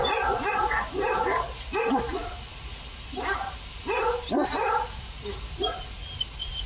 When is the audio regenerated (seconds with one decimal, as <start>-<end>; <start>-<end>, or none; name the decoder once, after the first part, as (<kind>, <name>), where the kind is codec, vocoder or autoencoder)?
none

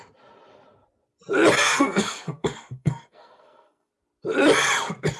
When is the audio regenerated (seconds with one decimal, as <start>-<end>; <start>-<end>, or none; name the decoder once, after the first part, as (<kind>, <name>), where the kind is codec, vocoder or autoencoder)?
1.6-3.9 (codec, SNAC)

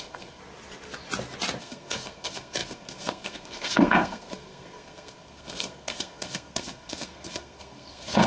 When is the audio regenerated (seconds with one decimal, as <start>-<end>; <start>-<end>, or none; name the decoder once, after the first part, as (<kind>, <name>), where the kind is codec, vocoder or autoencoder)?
0.0-0.4 (codec, SNAC); 1.6-8.3

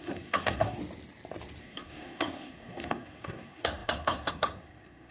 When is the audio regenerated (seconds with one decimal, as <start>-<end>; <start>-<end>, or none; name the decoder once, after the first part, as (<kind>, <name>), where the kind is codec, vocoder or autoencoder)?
0.0-0.8 (codec, SNAC); 1.6-5.1